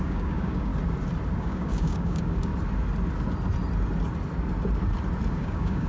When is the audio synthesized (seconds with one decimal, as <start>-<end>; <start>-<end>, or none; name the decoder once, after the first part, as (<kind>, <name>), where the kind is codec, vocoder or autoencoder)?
0.0-0.7 (codec, DAC); 1.4-2.5; 5.3-5.9